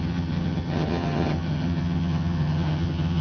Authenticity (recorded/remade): remade